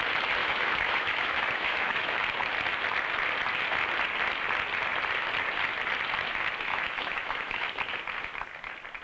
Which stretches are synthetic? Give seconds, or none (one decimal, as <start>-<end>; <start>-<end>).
0.4-2.2; 6.7-7.7